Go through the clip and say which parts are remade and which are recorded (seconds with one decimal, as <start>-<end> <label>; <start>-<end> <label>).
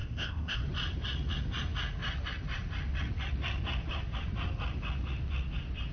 0.0-0.6 remade; 0.6-5.9 recorded